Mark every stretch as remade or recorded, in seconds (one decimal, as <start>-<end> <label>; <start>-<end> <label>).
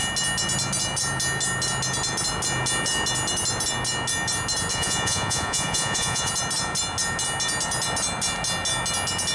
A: 0.0-4.7 recorded; 4.7-6.3 remade; 6.3-9.3 recorded